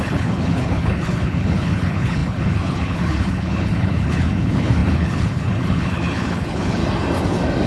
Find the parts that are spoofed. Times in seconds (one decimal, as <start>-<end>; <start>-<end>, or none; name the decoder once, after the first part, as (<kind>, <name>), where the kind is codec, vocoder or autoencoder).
0.0-6.8 (codec, HILCodec)